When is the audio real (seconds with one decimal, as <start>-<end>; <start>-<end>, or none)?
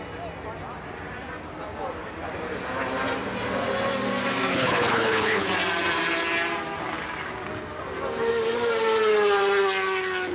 0.0-4.5; 5.5-10.3